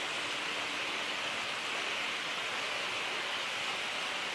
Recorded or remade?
recorded